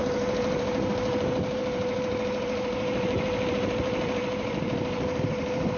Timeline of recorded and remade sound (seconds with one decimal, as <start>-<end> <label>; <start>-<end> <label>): 0.0-5.8 remade